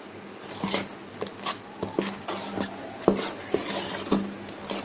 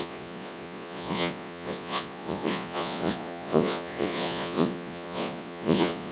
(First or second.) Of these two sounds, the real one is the first